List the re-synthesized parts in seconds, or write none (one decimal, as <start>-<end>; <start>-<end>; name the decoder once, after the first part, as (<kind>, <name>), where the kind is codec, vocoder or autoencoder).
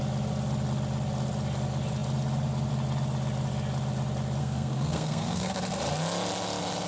4.4-5.6 (codec, SNAC)